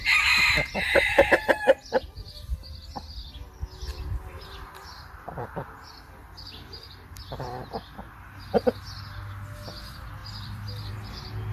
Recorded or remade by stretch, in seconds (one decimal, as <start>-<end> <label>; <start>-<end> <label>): 0.0-3.9 recorded; 3.9-5.9 remade; 5.9-10.2 recorded; 10.2-10.9 remade; 10.9-11.5 recorded